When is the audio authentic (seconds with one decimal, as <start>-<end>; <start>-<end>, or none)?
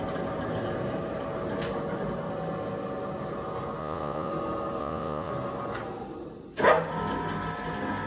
0.0-3.8; 4.3-4.8; 5.3-8.1